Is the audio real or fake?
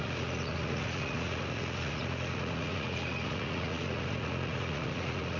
fake